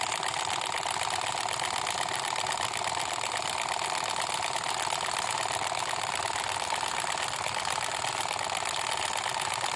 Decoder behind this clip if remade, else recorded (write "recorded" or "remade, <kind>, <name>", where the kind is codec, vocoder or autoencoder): recorded